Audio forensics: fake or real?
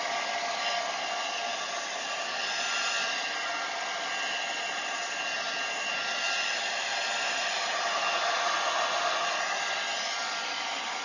real